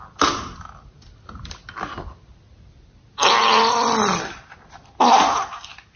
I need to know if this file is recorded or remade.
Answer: recorded